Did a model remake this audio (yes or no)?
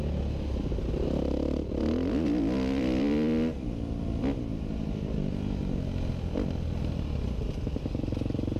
no